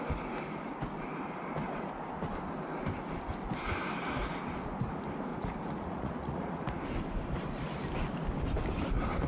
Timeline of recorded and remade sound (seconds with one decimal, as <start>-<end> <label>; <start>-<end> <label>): 0.0-5.3 recorded; 5.3-6.8 remade; 6.8-9.3 recorded